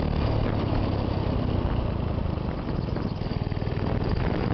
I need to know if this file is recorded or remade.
recorded